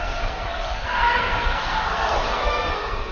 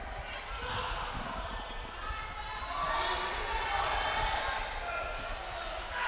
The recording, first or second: second